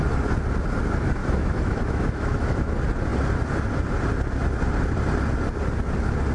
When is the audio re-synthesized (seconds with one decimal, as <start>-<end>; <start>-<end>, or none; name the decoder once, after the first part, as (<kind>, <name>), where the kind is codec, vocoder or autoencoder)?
1.2-2.7 (autoencoder, DAC-VAE)

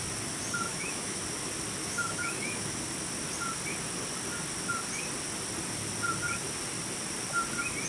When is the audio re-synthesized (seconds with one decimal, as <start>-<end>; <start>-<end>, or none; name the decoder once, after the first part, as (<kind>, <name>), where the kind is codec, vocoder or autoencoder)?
0.7-1.2 (autoencoder, DAC-VAE); 1.8-2.8

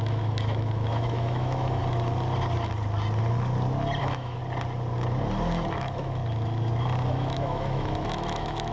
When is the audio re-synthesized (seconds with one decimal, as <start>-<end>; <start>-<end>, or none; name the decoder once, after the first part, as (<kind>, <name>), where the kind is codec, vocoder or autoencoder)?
0.0-1.8 (autoencoder, DAC-VAE); 4.0-4.4; 5.7-6.2; 7.1-8.7

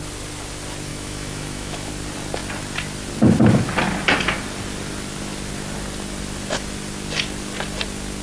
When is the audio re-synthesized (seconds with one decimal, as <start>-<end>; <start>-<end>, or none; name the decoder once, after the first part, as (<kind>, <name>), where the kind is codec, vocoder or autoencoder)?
0.9-1.9 (autoencoder, DAC-VAE)

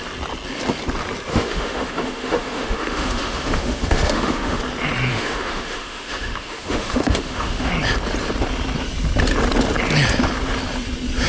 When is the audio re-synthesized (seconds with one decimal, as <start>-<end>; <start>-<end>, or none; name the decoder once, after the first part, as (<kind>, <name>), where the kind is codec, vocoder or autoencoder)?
1.3-4.6 (autoencoder, DAC-VAE); 5.1-7.7

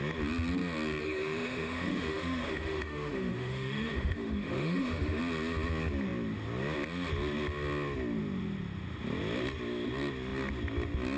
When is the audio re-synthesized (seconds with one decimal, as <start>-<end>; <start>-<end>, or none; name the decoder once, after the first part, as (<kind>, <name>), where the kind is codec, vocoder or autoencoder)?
1.0-5.2 (autoencoder, DAC-VAE)